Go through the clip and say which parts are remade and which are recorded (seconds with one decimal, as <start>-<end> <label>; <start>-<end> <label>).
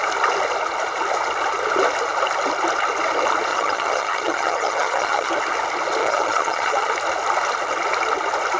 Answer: 0.0-3.5 recorded; 3.5-5.3 remade; 5.3-6.0 recorded; 6.0-6.9 remade; 6.9-8.6 recorded